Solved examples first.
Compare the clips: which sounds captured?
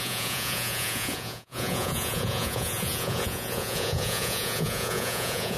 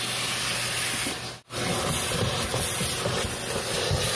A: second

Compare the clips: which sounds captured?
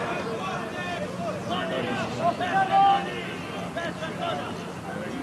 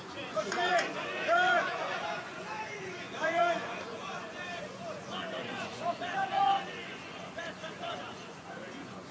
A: first